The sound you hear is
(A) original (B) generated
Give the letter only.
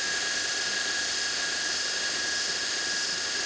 A